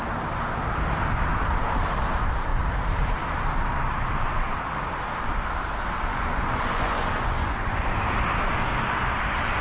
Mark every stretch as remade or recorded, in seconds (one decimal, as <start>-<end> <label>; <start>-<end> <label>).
0.0-6.1 recorded; 6.1-7.9 remade; 7.9-9.6 recorded